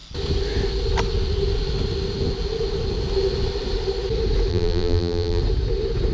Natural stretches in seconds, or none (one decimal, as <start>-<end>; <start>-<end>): 0.0-4.5; 5.4-6.1